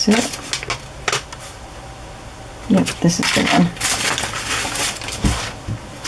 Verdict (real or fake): real